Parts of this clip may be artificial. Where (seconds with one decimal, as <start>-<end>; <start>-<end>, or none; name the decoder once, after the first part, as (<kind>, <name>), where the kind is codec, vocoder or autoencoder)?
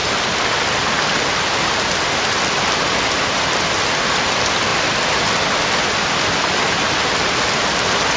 none